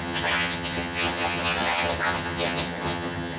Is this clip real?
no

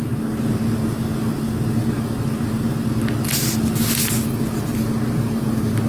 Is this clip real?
yes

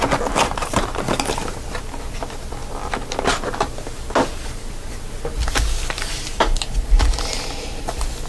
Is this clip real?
yes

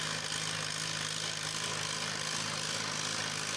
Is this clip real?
yes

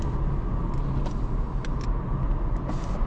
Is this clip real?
yes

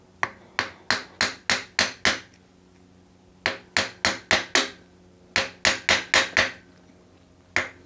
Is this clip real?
yes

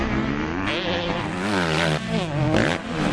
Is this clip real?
yes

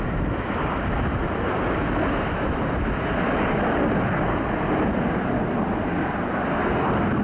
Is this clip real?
yes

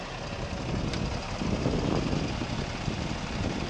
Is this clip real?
yes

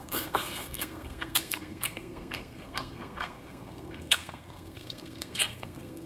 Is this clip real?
no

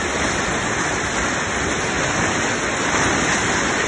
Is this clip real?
yes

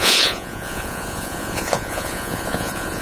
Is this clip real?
no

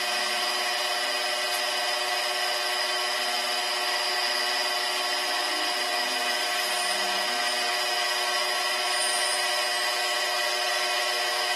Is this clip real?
yes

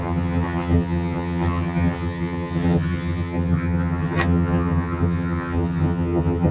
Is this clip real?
no